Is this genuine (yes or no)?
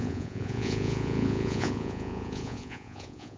no